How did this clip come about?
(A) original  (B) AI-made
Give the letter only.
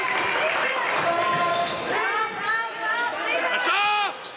A